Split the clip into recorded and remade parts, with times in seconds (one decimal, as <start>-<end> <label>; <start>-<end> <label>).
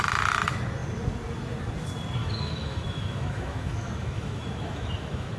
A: 0.0-2.2 recorded; 2.2-5.4 remade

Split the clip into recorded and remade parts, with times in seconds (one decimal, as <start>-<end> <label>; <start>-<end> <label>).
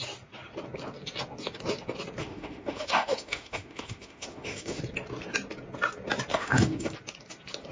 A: 0.0-2.2 recorded; 2.2-4.8 remade; 4.8-6.3 recorded; 6.3-6.9 remade; 6.9-7.7 recorded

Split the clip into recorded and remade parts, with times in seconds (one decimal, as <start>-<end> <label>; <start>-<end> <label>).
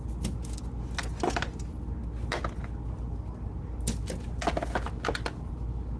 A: 0.0-6.0 recorded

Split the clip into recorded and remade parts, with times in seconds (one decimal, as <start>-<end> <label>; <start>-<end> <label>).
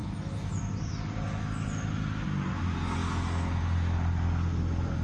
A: 0.0-5.0 recorded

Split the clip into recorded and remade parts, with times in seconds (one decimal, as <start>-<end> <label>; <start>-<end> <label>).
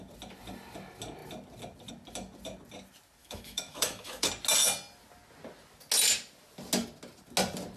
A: 0.0-3.2 recorded; 3.2-4.3 remade; 4.3-7.8 recorded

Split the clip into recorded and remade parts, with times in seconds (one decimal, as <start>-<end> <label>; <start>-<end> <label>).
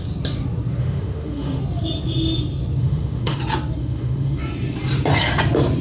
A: 0.0-0.8 recorded; 0.8-1.6 remade; 1.6-2.8 recorded; 2.8-3.4 remade; 3.4-3.8 recorded; 3.8-4.4 remade; 4.4-5.8 recorded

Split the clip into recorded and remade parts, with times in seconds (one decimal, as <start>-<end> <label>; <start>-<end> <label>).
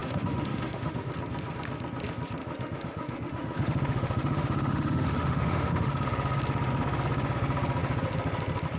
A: 0.0-1.1 remade; 1.1-2.4 recorded; 2.4-5.9 remade; 5.9-8.8 recorded